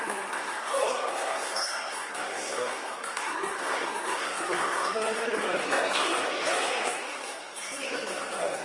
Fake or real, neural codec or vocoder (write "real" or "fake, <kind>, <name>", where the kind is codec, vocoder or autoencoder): fake, codec, SNAC